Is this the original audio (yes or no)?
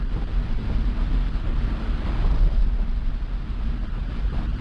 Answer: yes